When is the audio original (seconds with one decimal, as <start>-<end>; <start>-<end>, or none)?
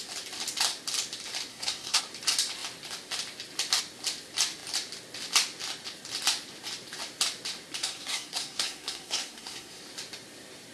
0.0-1.5; 2.0-7.8; 9.8-10.7